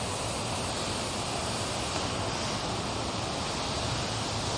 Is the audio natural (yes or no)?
yes